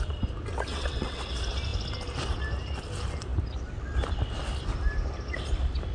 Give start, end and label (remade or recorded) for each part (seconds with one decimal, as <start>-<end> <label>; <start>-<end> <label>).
0.0-0.7 recorded; 0.7-1.2 remade; 1.2-5.9 recorded